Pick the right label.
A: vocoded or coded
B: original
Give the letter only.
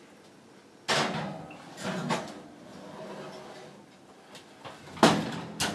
B